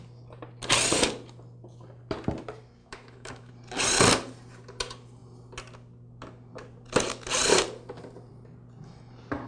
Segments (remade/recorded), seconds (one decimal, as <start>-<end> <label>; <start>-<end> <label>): 0.0-2.8 recorded; 2.8-3.5 remade; 3.5-9.5 recorded